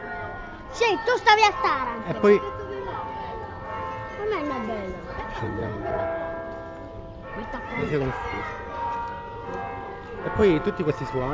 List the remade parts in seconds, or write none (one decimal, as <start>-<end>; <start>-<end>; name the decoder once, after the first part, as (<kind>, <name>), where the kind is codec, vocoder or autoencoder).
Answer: 5.1-6.0 (vocoder, Vocos); 7.3-8.4